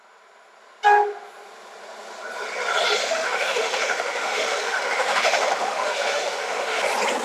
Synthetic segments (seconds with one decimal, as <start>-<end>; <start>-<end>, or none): 3.0-6.8